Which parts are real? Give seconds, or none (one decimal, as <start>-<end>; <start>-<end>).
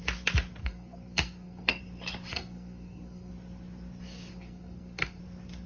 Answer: 0.0-0.6; 1.8-2.3; 3.3-4.3; 5.2-5.7